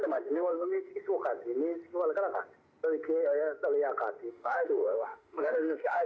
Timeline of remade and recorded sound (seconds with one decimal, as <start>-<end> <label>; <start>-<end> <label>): 0.0-0.9 remade; 0.9-4.3 recorded; 4.3-6.1 remade

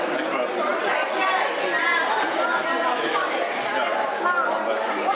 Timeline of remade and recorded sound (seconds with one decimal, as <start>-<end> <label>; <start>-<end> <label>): 0.0-5.1 recorded